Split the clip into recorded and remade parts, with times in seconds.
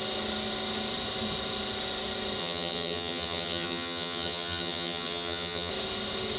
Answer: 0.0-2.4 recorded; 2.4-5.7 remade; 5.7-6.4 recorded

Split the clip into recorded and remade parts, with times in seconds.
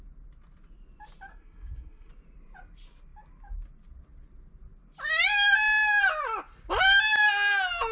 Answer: 0.0-1.3 recorded; 1.3-2.1 remade; 2.1-7.9 recorded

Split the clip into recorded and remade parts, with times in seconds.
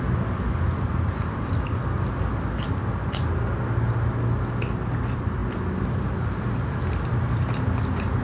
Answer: 0.0-8.2 recorded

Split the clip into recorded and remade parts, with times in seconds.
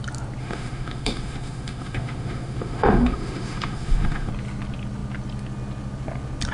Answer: 0.0-0.4 recorded; 0.4-4.3 remade; 4.3-6.5 recorded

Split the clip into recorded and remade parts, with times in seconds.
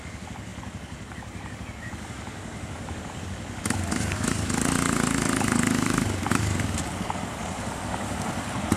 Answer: 0.0-8.8 remade